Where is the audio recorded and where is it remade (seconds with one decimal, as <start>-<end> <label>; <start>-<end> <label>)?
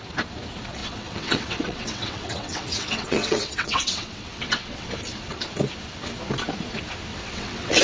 0.0-0.8 recorded; 0.8-4.9 remade; 4.9-7.1 recorded; 7.1-7.8 remade